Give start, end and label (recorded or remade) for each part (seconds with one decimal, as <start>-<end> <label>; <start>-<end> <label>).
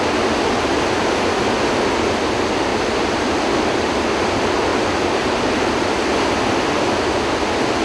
0.0-2.7 recorded; 2.7-3.4 remade; 3.4-4.7 recorded; 4.7-6.1 remade; 6.1-7.8 recorded